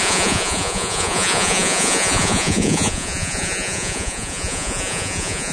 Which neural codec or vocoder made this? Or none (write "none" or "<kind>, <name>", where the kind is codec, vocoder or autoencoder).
vocoder, Vocos